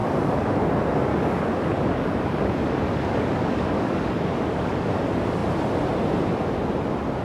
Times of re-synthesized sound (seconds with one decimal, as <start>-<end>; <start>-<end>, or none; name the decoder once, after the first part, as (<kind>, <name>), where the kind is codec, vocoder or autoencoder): 0.0-0.7 (codec, DAC); 1.1-5.0